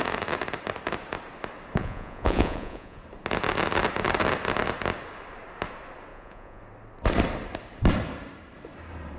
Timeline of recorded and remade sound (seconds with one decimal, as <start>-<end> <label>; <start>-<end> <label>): 0.0-1.8 recorded; 1.8-3.0 remade; 3.0-6.1 recorded; 6.1-6.6 remade; 6.6-9.2 recorded